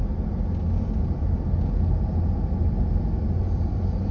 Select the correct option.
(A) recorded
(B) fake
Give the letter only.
A